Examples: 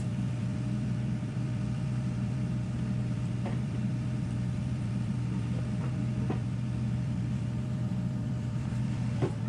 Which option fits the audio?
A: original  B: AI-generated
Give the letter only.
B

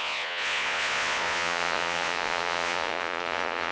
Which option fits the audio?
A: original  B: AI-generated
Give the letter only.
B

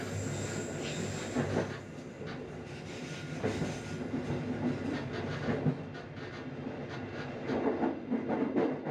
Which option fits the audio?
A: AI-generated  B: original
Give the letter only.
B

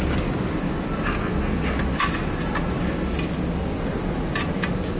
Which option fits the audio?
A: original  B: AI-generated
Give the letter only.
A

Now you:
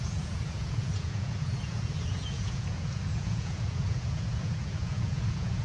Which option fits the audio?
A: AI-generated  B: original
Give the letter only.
A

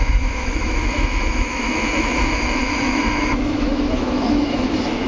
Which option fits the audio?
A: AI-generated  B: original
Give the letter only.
A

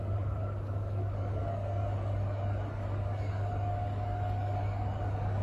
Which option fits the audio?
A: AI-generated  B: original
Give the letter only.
A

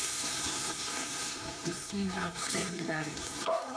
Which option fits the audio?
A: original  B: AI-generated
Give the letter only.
B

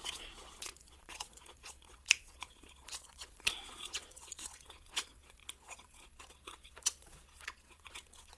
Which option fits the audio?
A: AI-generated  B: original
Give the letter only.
A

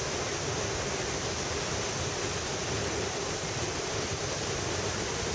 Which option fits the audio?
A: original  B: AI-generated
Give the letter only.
A